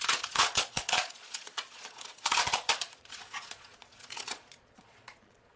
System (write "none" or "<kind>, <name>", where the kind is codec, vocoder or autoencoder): vocoder, Vocos